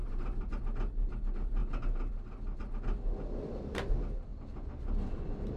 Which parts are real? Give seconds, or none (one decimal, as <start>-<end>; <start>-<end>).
0.5-5.6